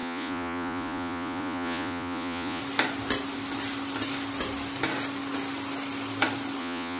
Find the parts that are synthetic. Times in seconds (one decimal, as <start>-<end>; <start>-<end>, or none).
0.0-2.6; 6.6-7.0